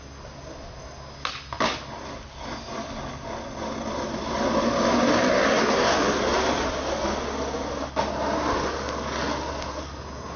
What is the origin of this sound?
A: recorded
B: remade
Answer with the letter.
A